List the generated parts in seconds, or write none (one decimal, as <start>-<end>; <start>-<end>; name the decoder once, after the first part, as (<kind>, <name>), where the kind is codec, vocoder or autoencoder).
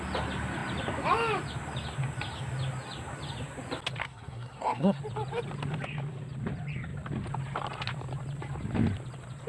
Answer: 4.0-5.0 (codec, SNAC)